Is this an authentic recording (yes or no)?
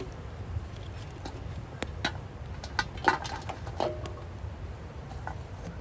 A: yes